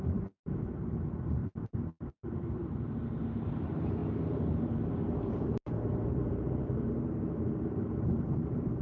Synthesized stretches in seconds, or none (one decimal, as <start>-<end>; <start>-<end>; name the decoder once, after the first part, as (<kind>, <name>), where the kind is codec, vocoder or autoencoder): 0.0-4.0 (vocoder, BigVGAN v2); 5.2-8.8